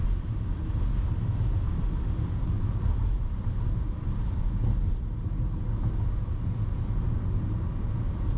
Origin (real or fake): real